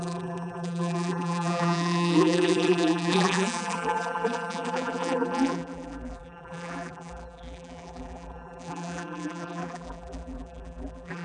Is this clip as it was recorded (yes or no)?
no